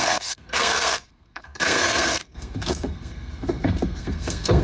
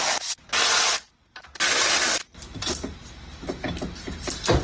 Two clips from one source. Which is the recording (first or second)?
second